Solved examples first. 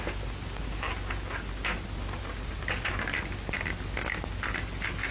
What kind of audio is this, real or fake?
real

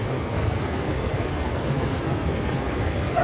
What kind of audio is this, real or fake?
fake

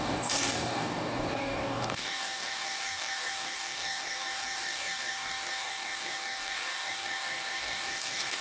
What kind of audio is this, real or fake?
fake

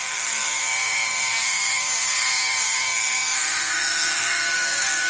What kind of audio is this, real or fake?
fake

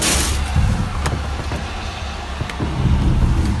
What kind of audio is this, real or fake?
real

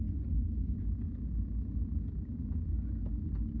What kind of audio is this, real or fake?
real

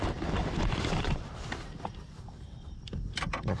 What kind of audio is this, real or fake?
fake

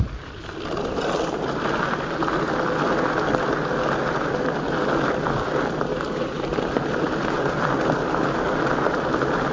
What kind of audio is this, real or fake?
real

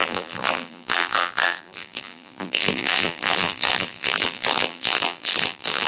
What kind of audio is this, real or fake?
fake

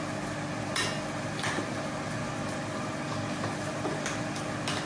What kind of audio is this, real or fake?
real